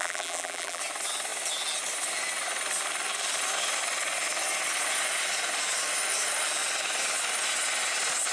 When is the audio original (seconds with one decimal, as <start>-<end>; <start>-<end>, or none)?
0.8-8.3